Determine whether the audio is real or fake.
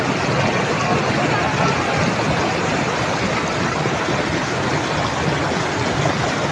real